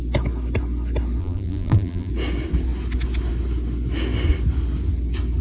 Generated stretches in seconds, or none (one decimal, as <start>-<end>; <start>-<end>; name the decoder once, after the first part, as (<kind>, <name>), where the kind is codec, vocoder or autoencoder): 1.2-2.1 (vocoder, BigVGAN v2)